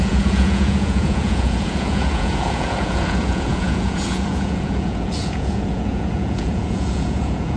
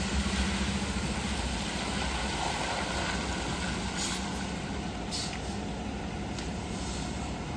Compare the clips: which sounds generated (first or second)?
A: first